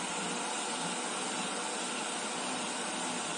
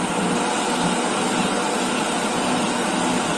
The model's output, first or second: first